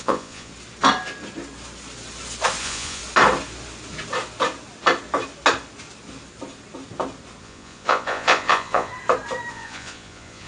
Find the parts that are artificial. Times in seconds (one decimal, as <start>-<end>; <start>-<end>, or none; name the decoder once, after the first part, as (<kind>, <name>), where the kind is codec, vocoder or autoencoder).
0.0-0.5 (vocoder, Vocos); 2.6-3.0; 7.4-8.9; 9.5-10.5